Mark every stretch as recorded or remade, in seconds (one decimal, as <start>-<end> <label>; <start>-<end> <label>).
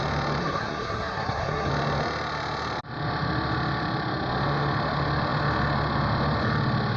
0.0-0.4 recorded; 0.4-1.7 remade; 1.7-7.0 recorded